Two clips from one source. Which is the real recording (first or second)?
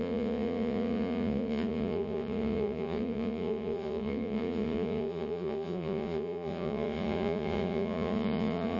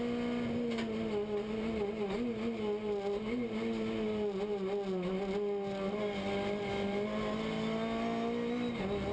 second